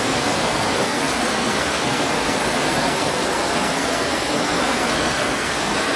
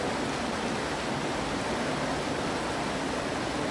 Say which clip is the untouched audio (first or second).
second